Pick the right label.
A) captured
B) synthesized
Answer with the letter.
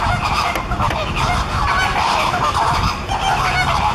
B